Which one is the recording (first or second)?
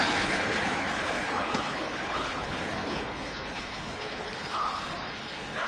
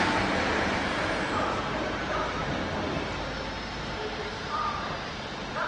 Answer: second